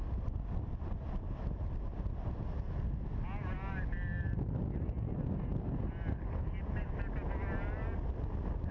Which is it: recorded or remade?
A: recorded